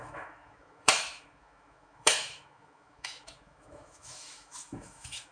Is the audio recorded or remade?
remade